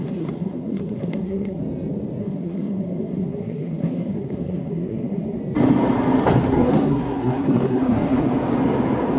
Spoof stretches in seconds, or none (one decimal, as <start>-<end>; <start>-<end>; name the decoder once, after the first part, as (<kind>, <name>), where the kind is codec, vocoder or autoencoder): 0.0-1.6 (codec, SNAC); 2.2-5.4; 6.5-8.3